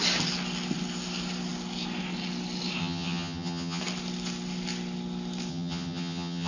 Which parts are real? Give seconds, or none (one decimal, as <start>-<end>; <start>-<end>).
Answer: 0.0-2.8; 3.8-5.5